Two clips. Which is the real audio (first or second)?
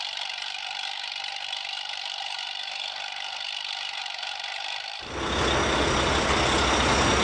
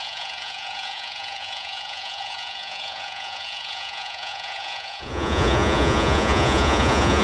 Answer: first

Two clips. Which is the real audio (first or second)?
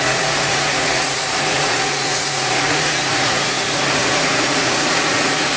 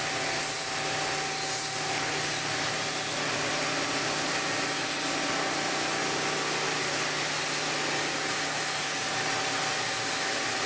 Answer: second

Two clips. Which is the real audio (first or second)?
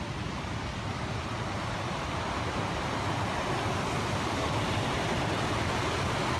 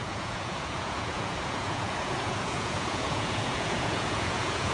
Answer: first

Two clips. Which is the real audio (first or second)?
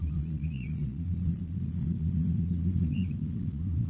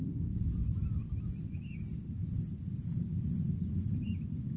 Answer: second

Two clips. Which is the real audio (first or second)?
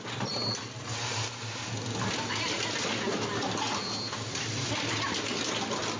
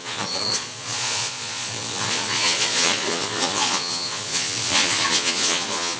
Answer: first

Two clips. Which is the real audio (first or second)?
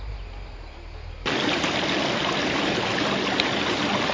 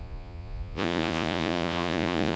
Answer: first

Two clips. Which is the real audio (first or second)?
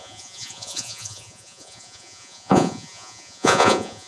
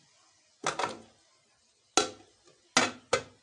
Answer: second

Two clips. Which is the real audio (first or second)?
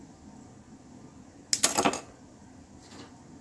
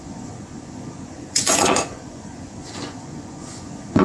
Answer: first